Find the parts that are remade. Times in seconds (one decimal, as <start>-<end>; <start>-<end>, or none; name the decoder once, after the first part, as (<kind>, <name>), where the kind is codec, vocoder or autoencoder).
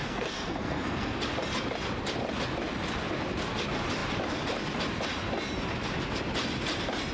0.0-1.2 (codec, SNAC)